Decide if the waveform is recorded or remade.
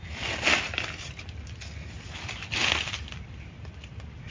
recorded